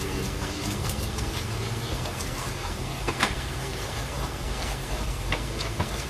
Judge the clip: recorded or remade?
remade